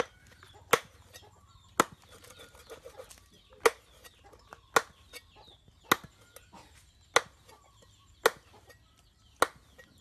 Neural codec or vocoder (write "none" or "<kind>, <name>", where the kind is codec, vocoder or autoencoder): none